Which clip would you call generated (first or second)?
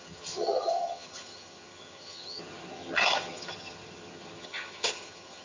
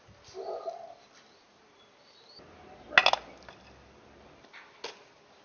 first